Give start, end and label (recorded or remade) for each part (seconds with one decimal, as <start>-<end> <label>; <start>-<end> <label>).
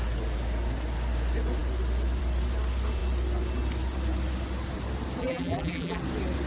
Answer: 0.0-5.2 recorded; 5.2-6.0 remade; 6.0-6.5 recorded